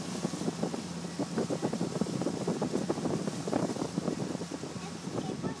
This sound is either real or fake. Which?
fake